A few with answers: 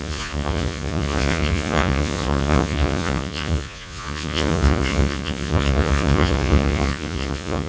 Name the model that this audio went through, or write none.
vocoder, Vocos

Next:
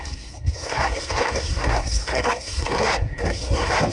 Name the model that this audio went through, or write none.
codec, SNAC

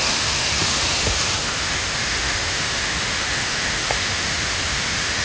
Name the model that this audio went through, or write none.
autoencoder, DAC-VAE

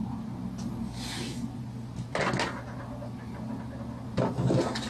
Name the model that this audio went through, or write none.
none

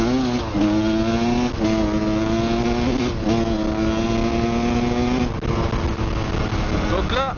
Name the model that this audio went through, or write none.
none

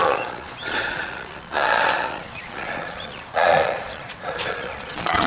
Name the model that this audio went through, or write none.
vocoder, Vocos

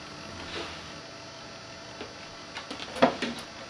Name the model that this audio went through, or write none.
none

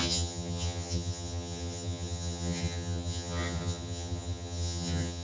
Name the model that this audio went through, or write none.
vocoder, HiFi-GAN